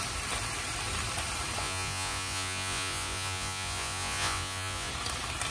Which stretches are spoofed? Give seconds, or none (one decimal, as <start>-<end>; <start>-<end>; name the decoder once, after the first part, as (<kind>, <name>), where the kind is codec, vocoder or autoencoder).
1.6-4.9 (vocoder, Vocos)